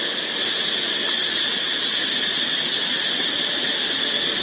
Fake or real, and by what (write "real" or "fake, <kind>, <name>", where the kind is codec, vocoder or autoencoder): real